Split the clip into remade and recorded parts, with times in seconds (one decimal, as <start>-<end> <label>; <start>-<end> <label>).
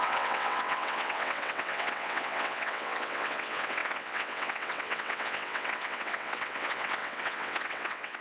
0.0-8.2 remade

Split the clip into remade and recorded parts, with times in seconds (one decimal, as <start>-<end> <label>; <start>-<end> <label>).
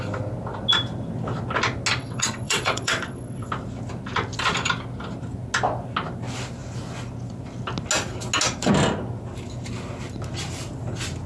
0.0-2.0 recorded; 2.0-3.5 remade; 3.5-11.3 recorded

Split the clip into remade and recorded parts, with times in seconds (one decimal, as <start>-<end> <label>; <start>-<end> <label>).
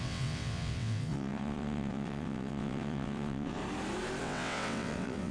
0.0-3.6 remade; 3.6-4.2 recorded; 4.2-5.3 remade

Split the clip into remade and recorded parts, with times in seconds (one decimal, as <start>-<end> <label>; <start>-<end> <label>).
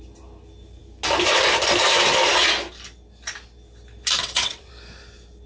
0.0-4.2 recorded; 4.2-4.7 remade; 4.7-5.5 recorded